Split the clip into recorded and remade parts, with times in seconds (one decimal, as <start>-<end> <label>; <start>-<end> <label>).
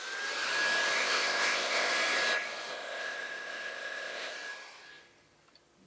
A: 0.0-1.0 recorded; 1.0-1.9 remade; 1.9-2.7 recorded; 2.7-4.3 remade; 4.3-5.9 recorded